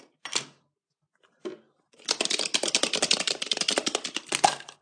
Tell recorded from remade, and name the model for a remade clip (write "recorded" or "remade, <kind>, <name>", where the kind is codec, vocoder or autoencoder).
recorded